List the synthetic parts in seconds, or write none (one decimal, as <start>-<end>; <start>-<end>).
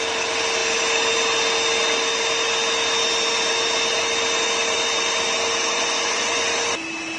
5.7-6.4